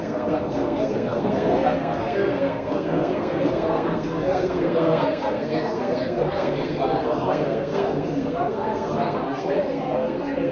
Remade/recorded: remade